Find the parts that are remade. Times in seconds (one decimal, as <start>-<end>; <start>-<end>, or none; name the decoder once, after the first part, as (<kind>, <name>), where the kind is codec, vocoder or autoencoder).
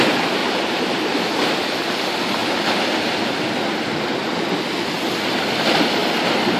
0.4-1.9 (vocoder, BigVGAN v2)